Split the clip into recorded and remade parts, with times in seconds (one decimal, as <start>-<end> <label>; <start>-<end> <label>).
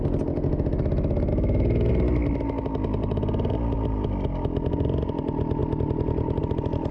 0.0-1.3 recorded; 1.3-1.9 remade; 1.9-6.9 recorded